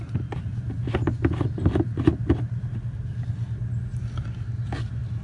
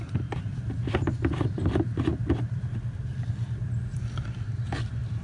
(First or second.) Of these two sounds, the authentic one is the first